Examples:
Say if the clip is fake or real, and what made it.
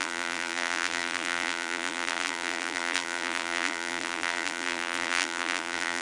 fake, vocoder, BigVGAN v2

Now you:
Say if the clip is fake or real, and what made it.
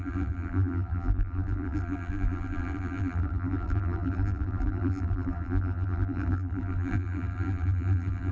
fake, vocoder, BigVGAN v2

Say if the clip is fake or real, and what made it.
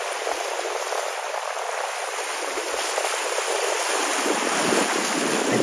fake, vocoder, BigVGAN v2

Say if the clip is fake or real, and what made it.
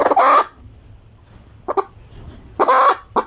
real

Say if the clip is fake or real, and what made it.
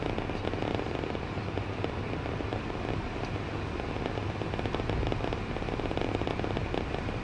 real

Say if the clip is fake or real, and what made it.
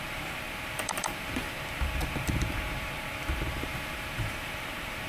fake, vocoder, BigVGAN v2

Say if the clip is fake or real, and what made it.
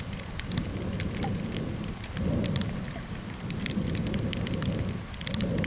fake, vocoder, BigVGAN v2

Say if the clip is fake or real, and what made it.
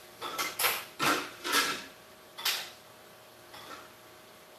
fake, vocoder, BigVGAN v2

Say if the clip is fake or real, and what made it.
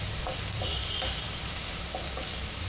fake, vocoder, BigVGAN v2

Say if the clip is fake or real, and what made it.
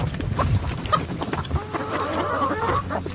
fake, vocoder, BigVGAN v2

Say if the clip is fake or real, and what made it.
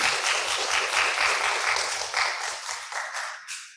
real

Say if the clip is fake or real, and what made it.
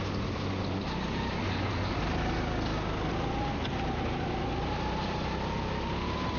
real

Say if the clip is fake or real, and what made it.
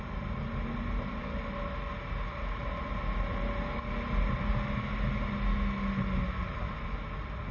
real